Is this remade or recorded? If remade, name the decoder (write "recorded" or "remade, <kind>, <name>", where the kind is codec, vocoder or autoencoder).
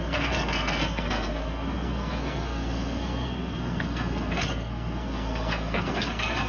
remade, codec, SNAC